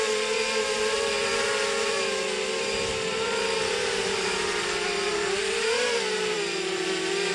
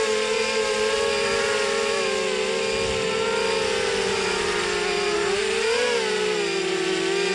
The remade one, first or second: first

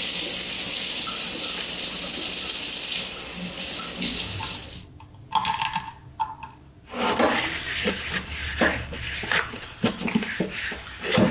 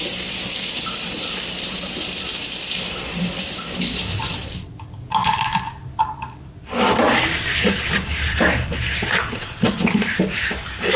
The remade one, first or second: second